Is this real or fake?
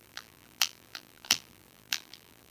fake